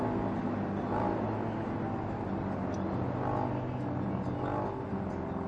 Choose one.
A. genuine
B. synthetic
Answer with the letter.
A